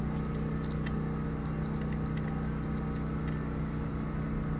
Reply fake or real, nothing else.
real